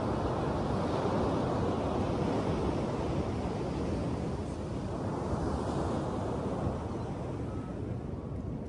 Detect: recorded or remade recorded